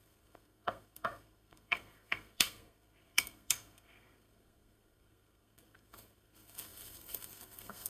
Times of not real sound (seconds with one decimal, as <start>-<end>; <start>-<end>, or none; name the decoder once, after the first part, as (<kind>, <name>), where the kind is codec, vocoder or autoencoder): 0.0-7.9 (codec, SNAC)